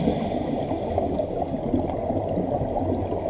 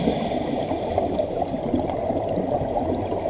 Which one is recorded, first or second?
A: first